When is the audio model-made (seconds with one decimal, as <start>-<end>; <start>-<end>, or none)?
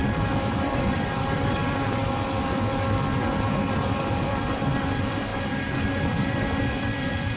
0.0-2.0; 4.0-5.3; 6.6-7.4